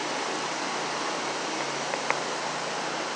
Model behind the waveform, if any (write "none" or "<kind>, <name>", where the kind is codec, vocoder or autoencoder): none